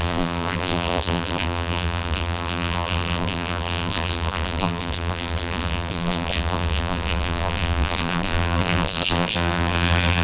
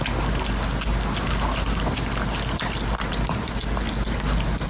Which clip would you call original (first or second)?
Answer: second